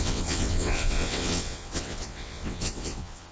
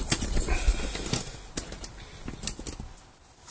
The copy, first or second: first